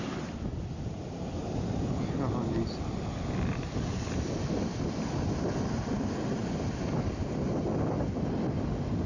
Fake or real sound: real